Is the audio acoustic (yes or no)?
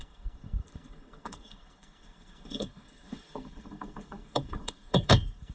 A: no